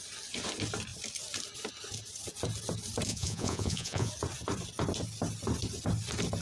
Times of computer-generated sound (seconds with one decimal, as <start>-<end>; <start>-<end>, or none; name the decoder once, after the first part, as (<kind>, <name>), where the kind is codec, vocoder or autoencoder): 3.1-4.1 (vocoder, Vocos)